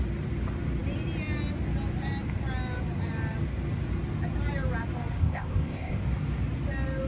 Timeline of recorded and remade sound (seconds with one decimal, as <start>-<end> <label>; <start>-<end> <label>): 0.0-5.2 recorded; 5.2-6.0 remade; 6.0-7.1 recorded